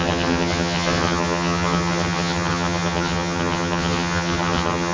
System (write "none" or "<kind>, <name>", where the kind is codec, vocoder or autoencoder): vocoder, HiFi-GAN